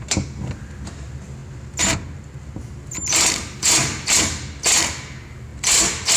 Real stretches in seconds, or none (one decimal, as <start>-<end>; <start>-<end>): 0.0-6.2